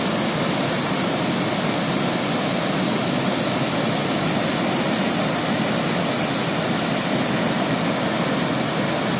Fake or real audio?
real